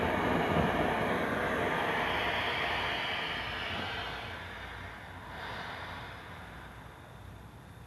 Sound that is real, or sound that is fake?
real